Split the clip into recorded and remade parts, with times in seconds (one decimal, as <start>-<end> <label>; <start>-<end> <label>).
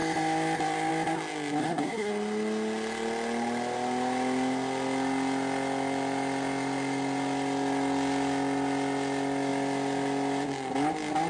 0.0-1.6 recorded; 1.6-2.1 remade; 2.1-11.3 recorded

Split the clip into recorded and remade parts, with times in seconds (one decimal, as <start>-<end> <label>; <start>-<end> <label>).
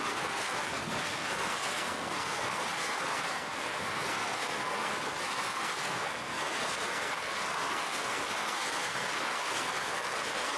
0.0-10.6 remade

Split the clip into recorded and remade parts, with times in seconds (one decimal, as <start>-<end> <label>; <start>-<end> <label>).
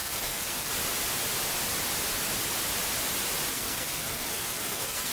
0.0-0.7 remade; 0.7-3.5 recorded; 3.5-5.1 remade